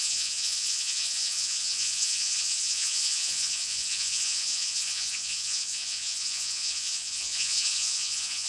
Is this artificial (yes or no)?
yes